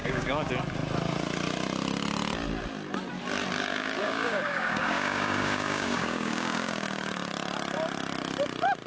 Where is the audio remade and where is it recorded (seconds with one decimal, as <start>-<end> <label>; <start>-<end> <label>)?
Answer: 0.0-0.5 remade; 0.5-3.7 recorded; 3.7-7.3 remade; 7.3-8.9 recorded

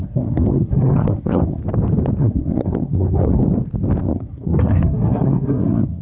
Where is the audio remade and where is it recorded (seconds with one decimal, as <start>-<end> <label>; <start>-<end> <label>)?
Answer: 0.0-1.6 remade; 1.6-2.2 recorded; 2.2-3.4 remade; 3.4-4.0 recorded; 4.0-6.0 remade

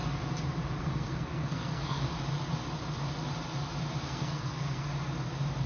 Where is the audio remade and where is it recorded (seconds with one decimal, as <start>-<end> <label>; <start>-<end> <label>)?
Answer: 0.0-0.8 recorded; 0.8-2.1 remade; 2.1-4.0 recorded; 4.0-4.9 remade; 4.9-5.7 recorded

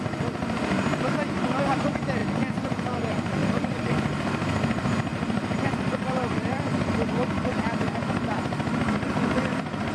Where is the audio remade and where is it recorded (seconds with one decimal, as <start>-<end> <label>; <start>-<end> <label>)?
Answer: 0.0-3.4 recorded; 3.4-3.9 remade; 3.9-5.1 recorded; 5.1-6.9 remade; 6.9-9.9 recorded

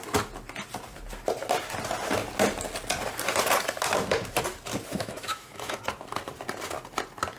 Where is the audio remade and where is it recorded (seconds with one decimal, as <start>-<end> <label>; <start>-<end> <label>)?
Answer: 0.0-4.9 recorded; 4.9-5.8 remade; 5.8-7.4 recorded